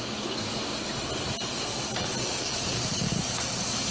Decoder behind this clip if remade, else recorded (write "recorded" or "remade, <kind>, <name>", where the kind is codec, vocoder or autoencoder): recorded